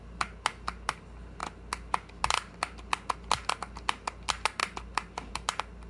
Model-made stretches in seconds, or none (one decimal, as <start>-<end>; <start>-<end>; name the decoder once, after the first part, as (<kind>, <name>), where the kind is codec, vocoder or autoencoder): none

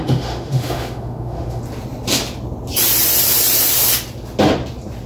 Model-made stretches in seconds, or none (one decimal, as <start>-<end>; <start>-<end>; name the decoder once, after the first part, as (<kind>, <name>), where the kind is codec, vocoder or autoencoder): 0.0-1.6 (autoencoder, DAC-VAE)

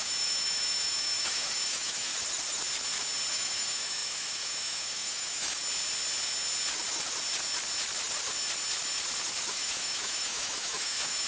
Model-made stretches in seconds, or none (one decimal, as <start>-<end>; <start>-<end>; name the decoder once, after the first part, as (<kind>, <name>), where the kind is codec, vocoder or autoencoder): 0.0-2.1 (autoencoder, DAC-VAE); 3.3-5.6; 9.5-11.3

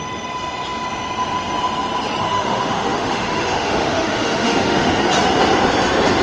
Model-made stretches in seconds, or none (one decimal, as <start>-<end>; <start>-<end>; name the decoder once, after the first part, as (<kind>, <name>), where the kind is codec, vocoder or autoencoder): 2.2-4.9 (autoencoder, DAC-VAE)

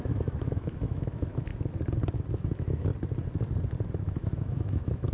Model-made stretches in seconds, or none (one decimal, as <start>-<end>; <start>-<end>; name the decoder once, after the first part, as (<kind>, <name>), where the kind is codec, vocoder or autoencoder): 0.0-1.5 (autoencoder, DAC-VAE); 2.3-2.9; 4.0-5.1